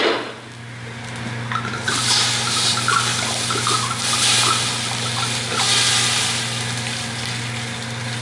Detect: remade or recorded recorded